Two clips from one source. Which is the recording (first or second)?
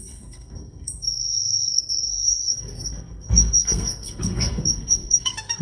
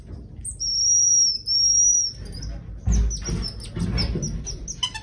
second